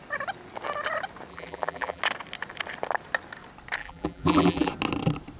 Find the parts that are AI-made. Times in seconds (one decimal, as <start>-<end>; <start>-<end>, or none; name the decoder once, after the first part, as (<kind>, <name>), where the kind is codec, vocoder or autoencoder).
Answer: 1.3-2.0 (vocoder, BigVGAN v2); 3.8-4.7